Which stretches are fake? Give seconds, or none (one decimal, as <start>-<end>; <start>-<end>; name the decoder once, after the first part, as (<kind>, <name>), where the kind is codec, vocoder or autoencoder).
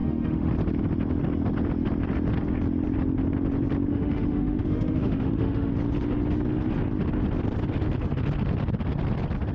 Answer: 0.0-0.5 (autoencoder, DAC-VAE); 3.9-5.7